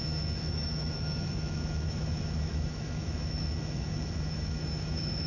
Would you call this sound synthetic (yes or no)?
yes